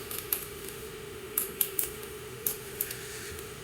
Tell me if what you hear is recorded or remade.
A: remade